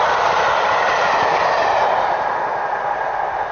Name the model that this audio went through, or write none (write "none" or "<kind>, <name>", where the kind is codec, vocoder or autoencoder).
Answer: none